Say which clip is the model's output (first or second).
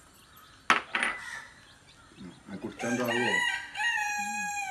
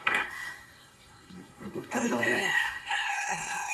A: second